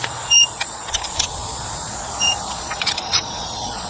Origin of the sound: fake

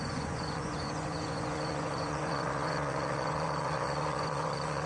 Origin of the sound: fake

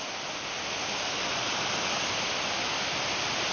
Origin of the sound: real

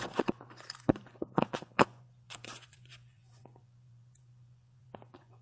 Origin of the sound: fake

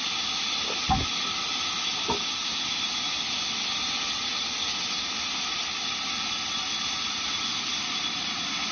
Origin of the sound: real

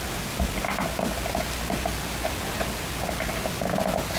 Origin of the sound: real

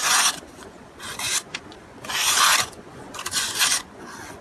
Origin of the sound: fake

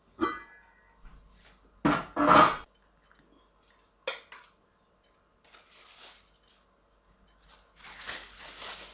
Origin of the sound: real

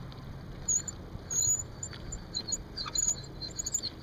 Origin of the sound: real